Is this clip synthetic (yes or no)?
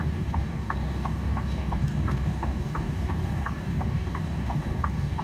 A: yes